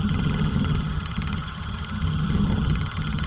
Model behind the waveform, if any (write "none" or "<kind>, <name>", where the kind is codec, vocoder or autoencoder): vocoder, HiFi-GAN